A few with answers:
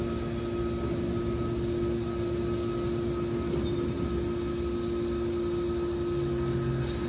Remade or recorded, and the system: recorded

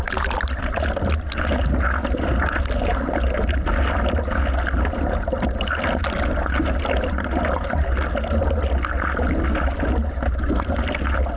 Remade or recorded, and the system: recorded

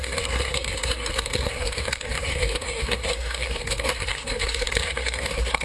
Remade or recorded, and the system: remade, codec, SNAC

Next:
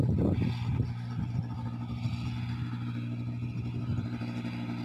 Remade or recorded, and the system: recorded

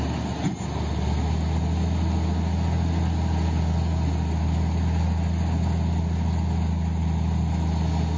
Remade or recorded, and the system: recorded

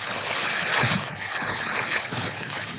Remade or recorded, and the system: remade, codec, HILCodec